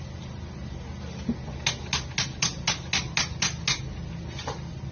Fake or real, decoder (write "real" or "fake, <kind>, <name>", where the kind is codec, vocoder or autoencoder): real